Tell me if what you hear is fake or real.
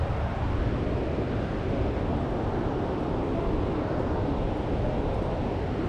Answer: real